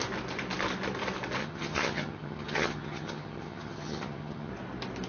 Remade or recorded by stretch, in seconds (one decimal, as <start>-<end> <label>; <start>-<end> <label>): 0.0-1.4 recorded; 1.4-4.5 remade; 4.5-5.1 recorded